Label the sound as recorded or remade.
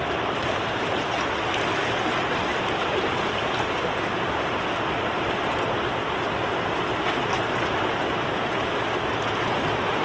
recorded